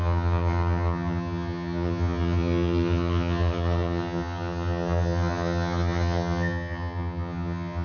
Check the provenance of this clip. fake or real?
fake